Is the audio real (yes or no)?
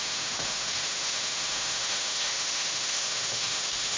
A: no